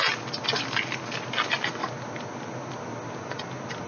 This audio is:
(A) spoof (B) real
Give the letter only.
B